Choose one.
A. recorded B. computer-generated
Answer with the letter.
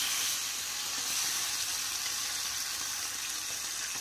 A